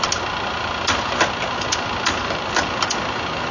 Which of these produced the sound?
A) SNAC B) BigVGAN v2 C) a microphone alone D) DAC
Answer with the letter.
C